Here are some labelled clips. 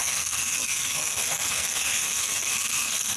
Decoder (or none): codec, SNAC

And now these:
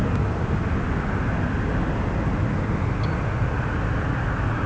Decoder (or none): none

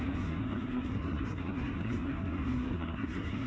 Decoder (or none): codec, SNAC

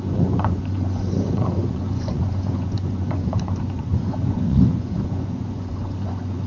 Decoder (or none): vocoder, Vocos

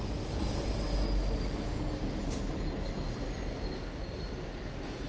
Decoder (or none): none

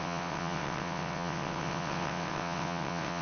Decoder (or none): vocoder, WaveNeXt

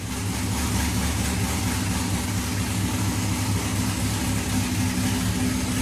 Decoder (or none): none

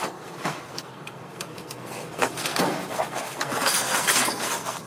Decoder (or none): codec, SNAC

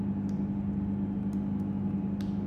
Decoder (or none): none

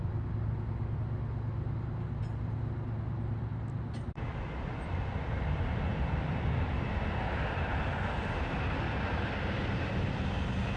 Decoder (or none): none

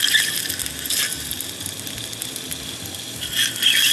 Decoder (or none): none